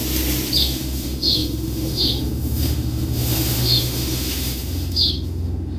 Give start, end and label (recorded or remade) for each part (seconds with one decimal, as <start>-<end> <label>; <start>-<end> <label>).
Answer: 0.0-0.6 recorded; 0.6-5.8 remade